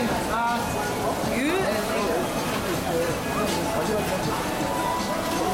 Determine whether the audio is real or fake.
real